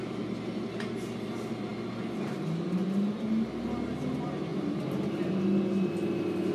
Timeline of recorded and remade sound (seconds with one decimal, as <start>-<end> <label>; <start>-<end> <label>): 0.0-4.5 recorded; 4.5-5.3 remade; 5.3-6.5 recorded